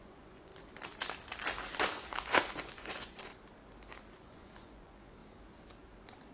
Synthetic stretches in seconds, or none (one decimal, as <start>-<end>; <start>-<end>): 0.0-0.5; 1.6-3.3; 4.2-5.2